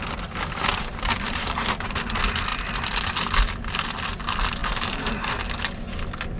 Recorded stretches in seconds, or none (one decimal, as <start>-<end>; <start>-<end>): 0.0-2.5; 3.1-6.4